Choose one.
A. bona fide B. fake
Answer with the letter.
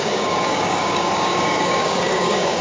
B